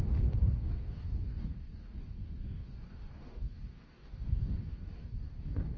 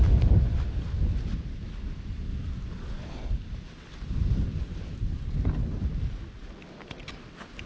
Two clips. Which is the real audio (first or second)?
second